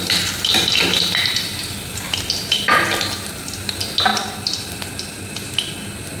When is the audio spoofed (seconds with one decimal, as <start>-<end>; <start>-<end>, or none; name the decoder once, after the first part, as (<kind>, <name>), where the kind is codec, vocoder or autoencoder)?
none